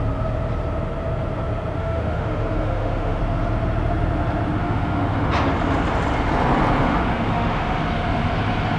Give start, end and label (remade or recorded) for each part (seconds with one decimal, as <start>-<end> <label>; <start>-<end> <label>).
0.0-1.8 recorded; 1.8-3.2 remade; 3.2-4.6 recorded; 4.6-5.3 remade; 5.3-6.8 recorded; 6.8-7.8 remade; 7.8-8.8 recorded